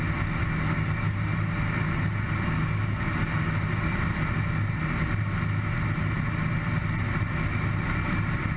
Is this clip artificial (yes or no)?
no